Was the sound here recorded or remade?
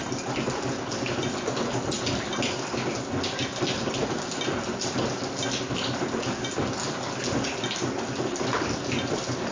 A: recorded